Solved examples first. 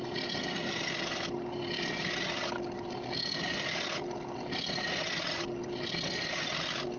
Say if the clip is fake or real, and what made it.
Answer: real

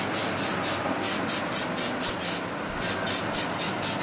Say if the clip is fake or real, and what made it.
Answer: real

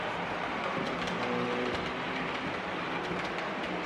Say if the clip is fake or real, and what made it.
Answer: real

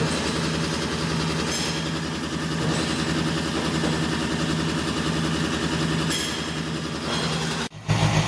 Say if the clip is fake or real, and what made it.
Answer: real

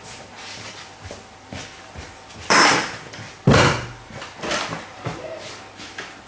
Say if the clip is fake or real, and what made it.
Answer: real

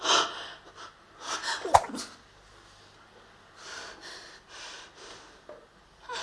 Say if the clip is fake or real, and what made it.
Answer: real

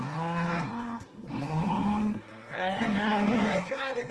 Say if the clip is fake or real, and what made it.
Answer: fake, codec, SNAC